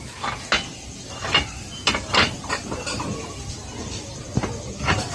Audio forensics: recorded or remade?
recorded